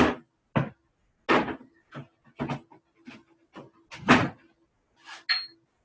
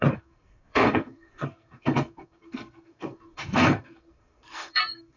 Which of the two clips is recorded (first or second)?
first